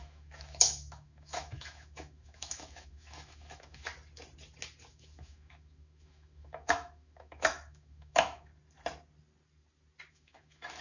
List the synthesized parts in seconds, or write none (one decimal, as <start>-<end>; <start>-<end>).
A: 0.0-3.9; 4.9-8.5; 10.1-10.8